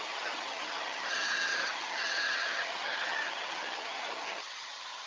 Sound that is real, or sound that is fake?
fake